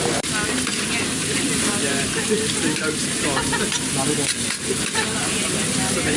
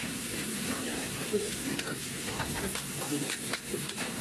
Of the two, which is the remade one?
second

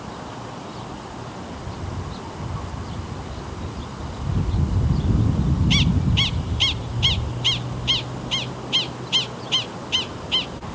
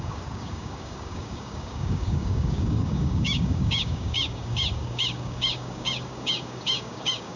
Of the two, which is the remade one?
second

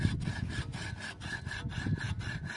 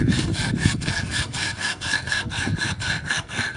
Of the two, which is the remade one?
second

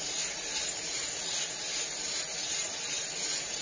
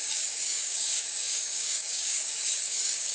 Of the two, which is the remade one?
second